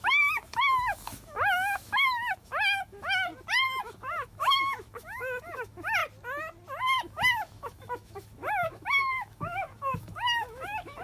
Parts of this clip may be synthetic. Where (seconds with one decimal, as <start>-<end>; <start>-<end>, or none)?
0.0-3.3; 3.8-6.0; 6.8-11.0